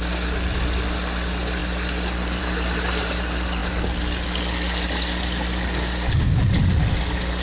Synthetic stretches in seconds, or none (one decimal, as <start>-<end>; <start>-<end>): none